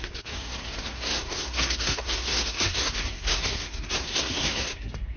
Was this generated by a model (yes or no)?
yes